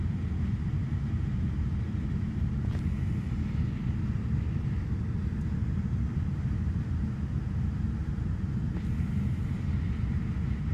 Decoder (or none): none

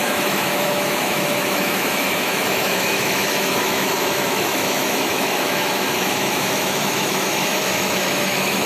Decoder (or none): autoencoder, DAC-VAE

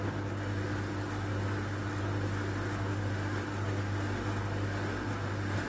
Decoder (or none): none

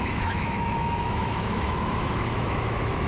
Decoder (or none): autoencoder, DAC-VAE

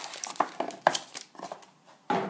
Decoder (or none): none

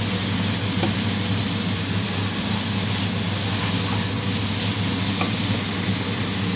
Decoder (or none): none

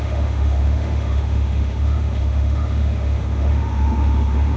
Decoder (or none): autoencoder, DAC-VAE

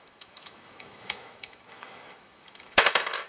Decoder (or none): autoencoder, DAC-VAE